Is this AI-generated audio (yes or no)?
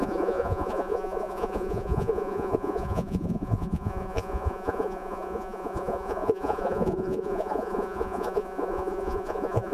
yes